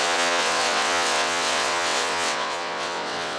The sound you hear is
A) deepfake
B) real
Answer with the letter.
A